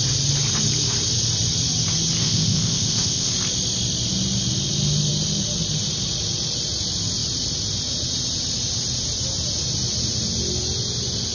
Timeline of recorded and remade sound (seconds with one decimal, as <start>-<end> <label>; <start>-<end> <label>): 0.0-2.2 recorded; 2.2-3.3 remade; 3.3-11.3 recorded